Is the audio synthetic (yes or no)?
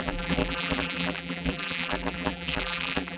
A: yes